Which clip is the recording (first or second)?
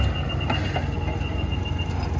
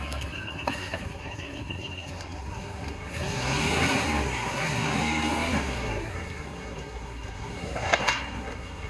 first